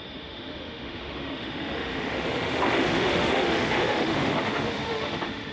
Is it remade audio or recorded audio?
remade